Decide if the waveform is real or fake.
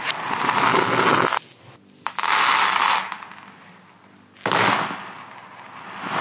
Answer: real